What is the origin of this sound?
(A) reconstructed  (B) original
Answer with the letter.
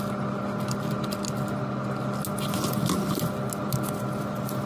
B